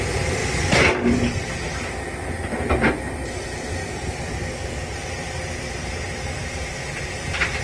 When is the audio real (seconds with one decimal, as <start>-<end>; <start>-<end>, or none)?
0.0-6.4